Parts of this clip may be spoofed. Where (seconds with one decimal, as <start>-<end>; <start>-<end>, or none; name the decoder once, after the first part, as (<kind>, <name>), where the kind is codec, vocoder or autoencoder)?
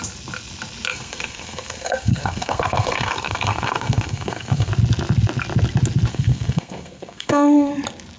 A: 0.9-4.7 (codec, SNAC); 6.1-7.7